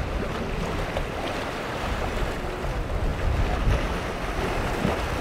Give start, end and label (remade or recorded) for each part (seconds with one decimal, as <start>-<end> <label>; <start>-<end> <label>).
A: 0.0-5.2 recorded